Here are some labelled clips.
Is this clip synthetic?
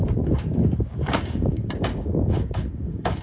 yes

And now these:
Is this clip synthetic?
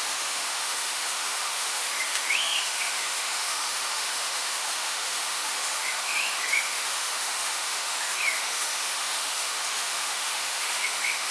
yes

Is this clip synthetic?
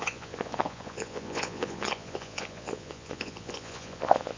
yes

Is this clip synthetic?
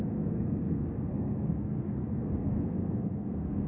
yes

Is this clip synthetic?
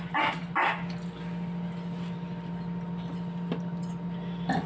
no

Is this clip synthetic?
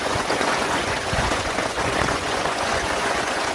yes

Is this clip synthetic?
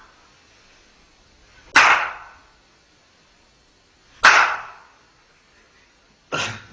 no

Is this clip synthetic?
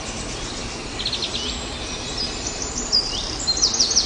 no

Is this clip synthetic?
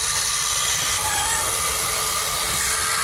no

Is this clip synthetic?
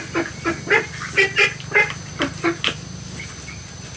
no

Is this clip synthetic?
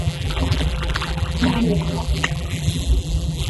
yes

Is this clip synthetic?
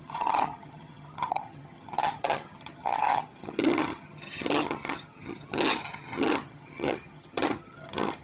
yes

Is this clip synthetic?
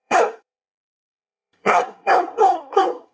yes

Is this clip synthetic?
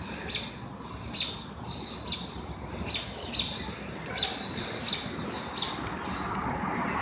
no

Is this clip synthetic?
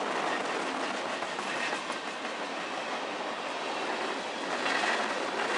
no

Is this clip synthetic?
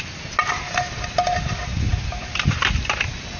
no